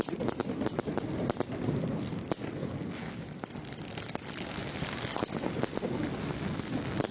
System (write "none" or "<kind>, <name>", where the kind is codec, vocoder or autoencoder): none